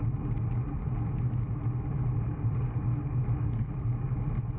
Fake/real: real